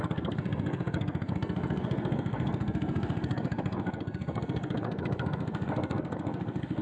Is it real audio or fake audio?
fake